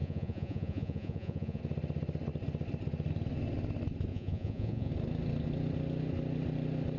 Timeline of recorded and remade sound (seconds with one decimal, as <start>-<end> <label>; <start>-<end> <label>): 0.0-1.6 remade; 1.6-4.1 recorded; 4.1-4.9 remade; 4.9-7.0 recorded